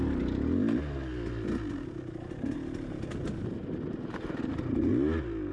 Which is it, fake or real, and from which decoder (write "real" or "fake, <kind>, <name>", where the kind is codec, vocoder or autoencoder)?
real